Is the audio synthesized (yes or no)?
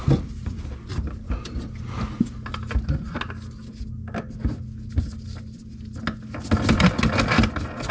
no